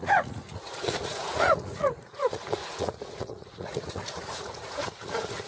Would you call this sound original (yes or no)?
no